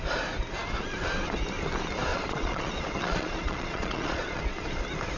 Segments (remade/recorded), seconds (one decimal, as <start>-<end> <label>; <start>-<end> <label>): 0.0-2.1 recorded; 2.1-4.4 remade; 4.4-5.2 recorded